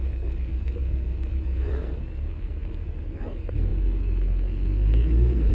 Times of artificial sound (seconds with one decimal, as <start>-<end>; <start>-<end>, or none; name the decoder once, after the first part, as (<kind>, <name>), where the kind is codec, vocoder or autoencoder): 0.0-5.5 (codec, SNAC)